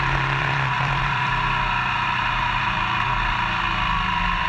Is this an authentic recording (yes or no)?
no